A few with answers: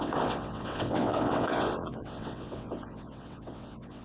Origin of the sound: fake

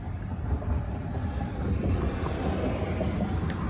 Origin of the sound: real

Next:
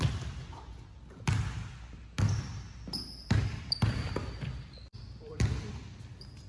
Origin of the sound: real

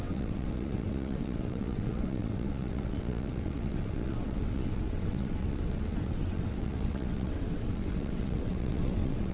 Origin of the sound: fake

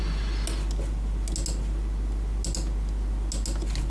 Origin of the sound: real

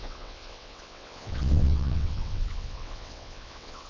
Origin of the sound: fake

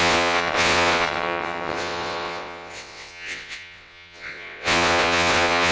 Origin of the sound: fake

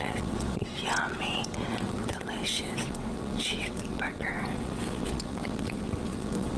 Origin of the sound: fake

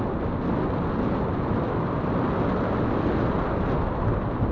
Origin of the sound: real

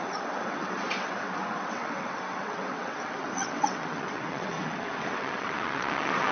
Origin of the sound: fake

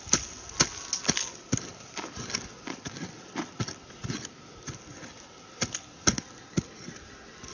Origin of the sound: real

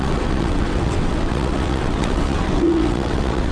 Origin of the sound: fake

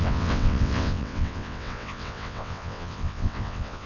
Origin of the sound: fake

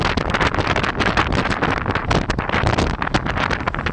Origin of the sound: real